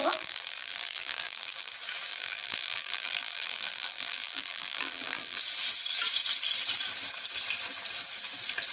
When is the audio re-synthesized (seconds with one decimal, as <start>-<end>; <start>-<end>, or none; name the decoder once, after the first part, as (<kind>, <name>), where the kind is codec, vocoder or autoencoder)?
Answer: 0.0-1.7 (vocoder, BigVGAN v2); 2.1-5.4